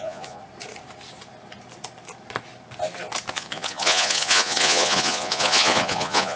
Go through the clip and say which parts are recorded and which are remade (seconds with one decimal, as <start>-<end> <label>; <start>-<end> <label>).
0.0-0.4 remade; 0.4-3.3 recorded; 3.3-6.4 remade